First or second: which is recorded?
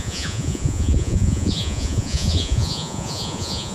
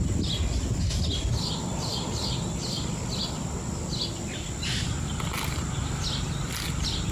second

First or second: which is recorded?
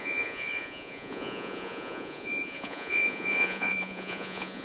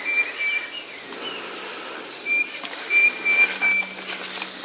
second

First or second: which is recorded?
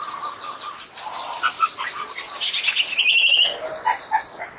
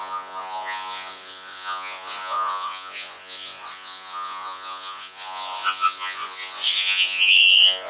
first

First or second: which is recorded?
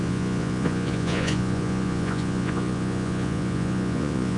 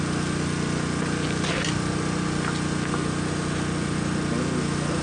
second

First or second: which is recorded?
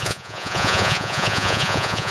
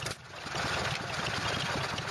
second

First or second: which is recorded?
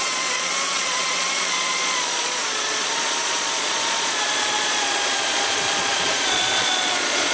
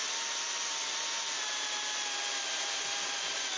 second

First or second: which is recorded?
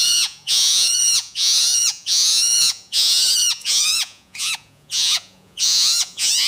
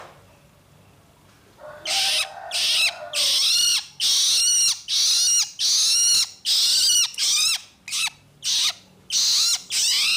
second